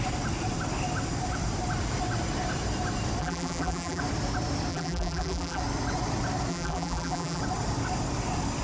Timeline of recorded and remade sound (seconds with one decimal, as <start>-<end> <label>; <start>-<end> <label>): 0.0-3.2 recorded; 3.2-4.0 remade; 4.0-4.7 recorded; 4.7-5.6 remade; 5.6-6.5 recorded; 6.5-7.4 remade; 7.4-8.6 recorded